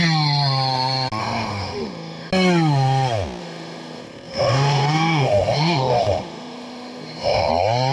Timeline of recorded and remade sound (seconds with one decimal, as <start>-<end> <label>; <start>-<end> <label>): 0.0-1.2 recorded; 1.2-2.3 remade; 2.3-3.4 recorded; 3.4-7.5 remade; 7.5-7.9 recorded